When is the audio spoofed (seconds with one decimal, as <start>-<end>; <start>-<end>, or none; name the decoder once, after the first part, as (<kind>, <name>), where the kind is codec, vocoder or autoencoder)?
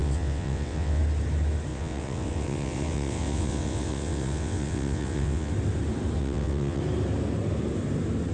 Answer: 0.0-1.0 (vocoder, WaveNeXt); 1.7-5.5; 6.2-6.8